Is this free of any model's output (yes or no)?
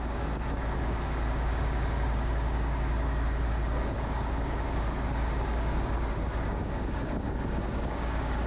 no